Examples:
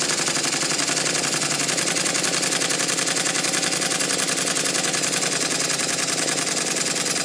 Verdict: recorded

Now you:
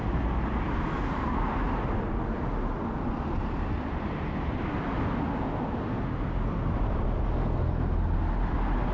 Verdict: recorded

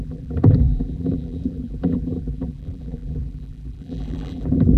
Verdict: remade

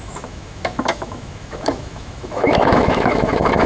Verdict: remade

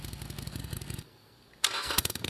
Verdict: remade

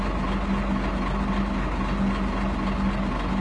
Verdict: recorded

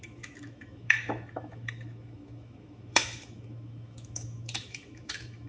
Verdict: remade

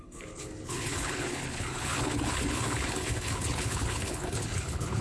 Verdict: remade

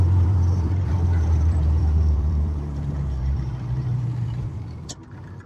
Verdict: remade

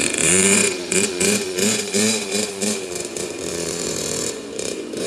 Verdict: remade